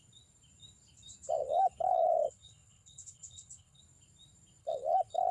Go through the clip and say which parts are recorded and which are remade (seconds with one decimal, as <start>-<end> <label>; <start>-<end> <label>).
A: 0.0-1.4 recorded; 1.4-3.8 remade; 3.8-4.6 recorded; 4.6-5.3 remade